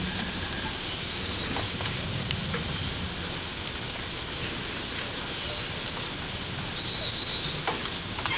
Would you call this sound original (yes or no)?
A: yes